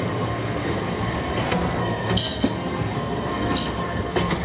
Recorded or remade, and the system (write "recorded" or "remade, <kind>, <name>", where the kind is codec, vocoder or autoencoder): remade, codec, SNAC